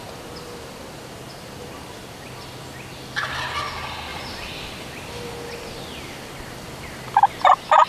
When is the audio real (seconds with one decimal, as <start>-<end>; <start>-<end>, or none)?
0.0-7.9